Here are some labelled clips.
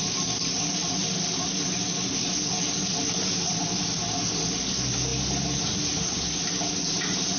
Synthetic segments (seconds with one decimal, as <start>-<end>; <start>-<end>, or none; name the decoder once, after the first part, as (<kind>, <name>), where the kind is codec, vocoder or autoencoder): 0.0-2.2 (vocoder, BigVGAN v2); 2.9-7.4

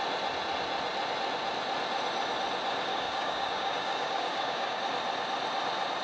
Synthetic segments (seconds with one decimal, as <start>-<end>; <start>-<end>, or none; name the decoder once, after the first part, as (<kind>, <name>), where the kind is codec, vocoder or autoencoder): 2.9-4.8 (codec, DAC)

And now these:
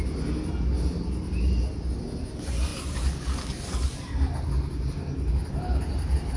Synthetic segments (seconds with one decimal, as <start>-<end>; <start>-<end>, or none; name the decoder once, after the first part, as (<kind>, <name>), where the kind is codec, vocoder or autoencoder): none

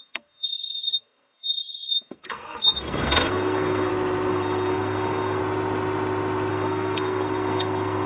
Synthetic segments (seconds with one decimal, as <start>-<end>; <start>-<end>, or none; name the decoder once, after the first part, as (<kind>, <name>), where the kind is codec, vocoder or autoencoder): 0.0-3.9 (codec, SNAC); 4.3-5.4; 6.5-8.1

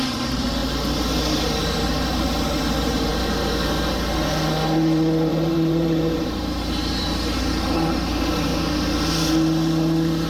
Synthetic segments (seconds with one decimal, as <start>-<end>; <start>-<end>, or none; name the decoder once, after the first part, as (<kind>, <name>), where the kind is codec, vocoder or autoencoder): 0.0-0.6 (vocoder, BigVGAN v2); 1.2-3.1; 5.3-8.5